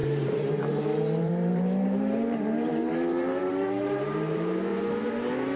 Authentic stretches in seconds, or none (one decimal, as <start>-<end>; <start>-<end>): 4.7-5.6